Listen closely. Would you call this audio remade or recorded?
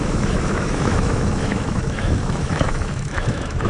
remade